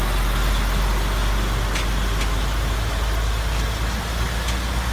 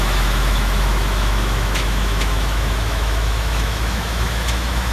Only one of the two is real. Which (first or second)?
first